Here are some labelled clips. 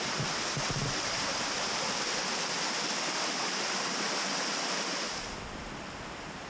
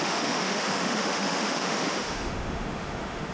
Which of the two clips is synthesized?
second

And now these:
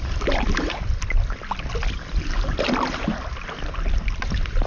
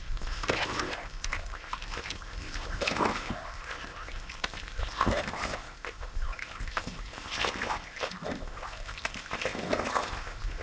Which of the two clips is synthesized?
second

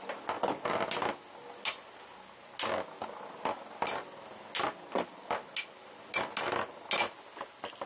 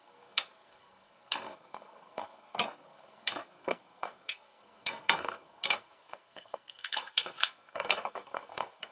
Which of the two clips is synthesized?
second